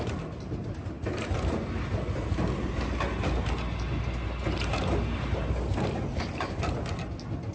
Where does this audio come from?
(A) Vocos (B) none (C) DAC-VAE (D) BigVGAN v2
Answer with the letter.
B